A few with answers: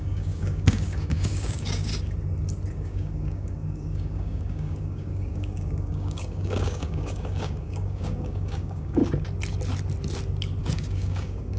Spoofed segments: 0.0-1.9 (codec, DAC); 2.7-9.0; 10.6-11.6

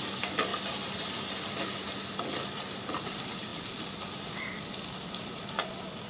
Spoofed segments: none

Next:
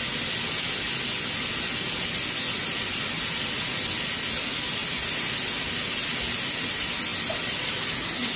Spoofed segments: 4.8-5.7 (vocoder, BigVGAN v2); 7.1-7.9

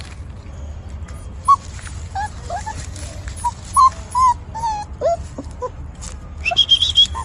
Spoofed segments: none

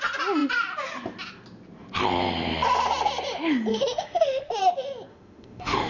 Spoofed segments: 3.7-4.6 (autoencoder, DAC-VAE); 5.1-5.9

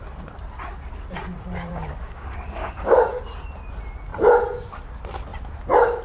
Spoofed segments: 1.7-3.1 (codec, DAC)

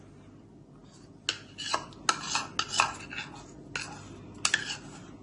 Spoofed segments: none